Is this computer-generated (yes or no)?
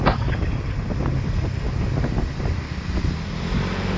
no